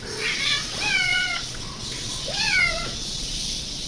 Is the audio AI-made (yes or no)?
yes